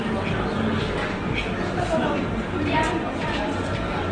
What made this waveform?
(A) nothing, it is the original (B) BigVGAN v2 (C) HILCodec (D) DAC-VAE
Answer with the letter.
A